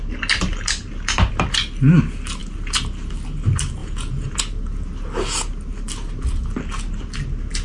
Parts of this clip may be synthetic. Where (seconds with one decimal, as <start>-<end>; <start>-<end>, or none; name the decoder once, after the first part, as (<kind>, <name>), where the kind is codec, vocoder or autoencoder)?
3.8-4.4 (vocoder, Vocos)